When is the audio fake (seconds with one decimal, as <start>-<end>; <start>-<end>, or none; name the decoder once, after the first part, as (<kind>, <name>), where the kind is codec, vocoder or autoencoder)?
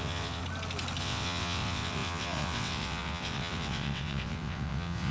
0.0-0.4 (vocoder, WaveNeXt); 1.0-5.1